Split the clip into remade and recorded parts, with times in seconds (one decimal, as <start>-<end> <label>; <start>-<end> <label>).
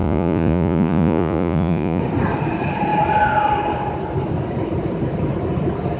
0.0-2.0 remade; 2.0-6.0 recorded